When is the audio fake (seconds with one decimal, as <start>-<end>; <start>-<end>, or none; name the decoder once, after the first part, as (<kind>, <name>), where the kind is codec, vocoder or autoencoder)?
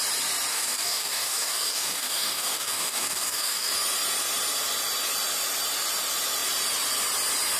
0.5-3.7 (codec, DAC)